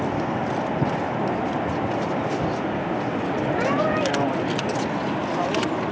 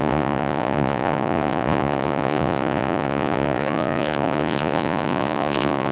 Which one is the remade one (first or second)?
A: second